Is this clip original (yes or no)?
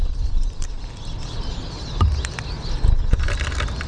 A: yes